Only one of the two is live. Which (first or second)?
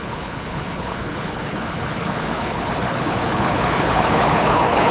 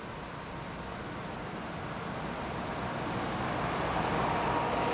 second